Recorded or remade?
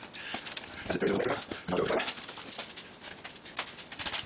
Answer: remade